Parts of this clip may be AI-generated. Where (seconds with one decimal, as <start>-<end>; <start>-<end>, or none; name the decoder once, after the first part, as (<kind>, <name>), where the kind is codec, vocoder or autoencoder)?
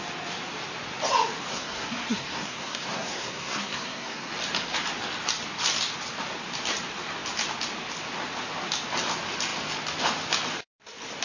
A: 1.5-4.3 (codec, SNAC)